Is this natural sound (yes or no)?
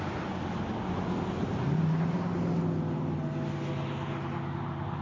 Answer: yes